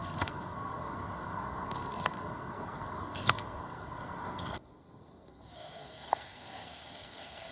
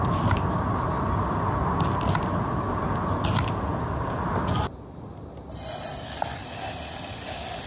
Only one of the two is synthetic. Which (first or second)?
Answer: first